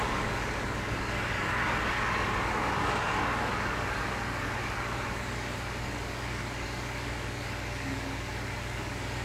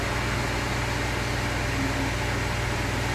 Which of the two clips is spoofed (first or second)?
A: first